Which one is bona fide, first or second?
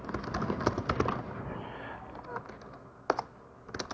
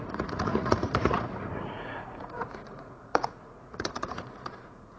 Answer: first